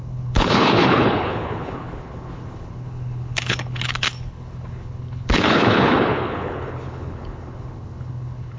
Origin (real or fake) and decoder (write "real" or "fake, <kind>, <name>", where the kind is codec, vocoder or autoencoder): fake, codec, HILCodec